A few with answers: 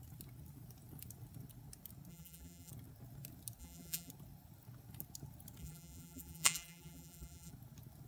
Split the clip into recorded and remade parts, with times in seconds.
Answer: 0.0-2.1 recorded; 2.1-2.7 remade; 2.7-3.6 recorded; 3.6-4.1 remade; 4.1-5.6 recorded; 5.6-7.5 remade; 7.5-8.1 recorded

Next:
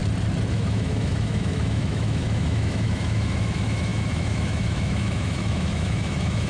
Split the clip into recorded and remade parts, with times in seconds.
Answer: 0.0-0.5 recorded; 0.5-6.5 remade

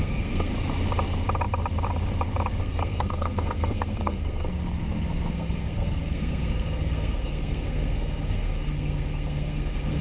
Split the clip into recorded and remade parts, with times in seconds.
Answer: 0.0-0.5 remade; 0.5-2.6 recorded; 2.6-4.5 remade; 4.5-5.3 recorded; 5.3-10.0 remade

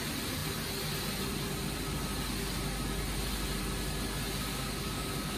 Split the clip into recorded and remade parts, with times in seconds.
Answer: 0.0-4.5 recorded; 4.5-5.4 remade

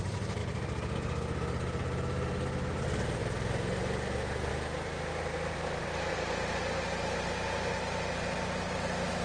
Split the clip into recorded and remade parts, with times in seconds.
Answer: 0.0-9.2 recorded

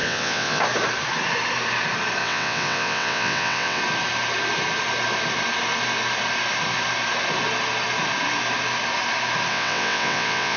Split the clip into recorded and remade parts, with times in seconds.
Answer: 0.0-0.6 remade; 0.6-2.2 recorded; 2.2-3.8 remade; 3.8-9.5 recorded; 9.5-10.6 remade